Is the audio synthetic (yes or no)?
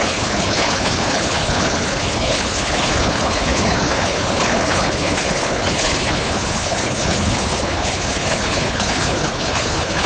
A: yes